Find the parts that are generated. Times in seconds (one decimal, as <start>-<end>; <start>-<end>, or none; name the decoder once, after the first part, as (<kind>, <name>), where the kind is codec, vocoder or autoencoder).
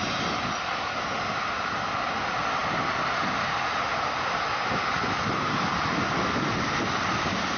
none